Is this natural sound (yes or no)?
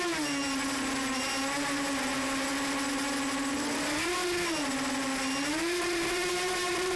yes